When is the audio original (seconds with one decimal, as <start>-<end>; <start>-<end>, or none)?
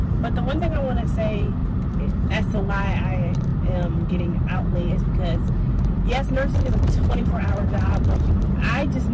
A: none